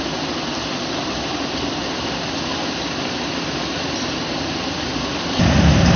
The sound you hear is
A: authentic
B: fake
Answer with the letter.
A